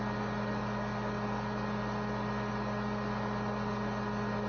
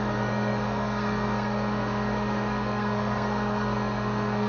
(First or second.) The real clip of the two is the first